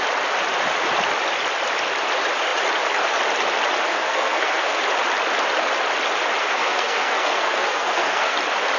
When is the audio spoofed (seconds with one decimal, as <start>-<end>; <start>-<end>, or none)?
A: 3.9-4.8; 6.4-8.4